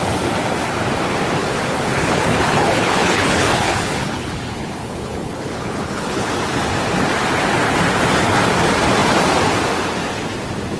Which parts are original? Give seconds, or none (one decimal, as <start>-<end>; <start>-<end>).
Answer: 0.0-1.4; 6.3-10.8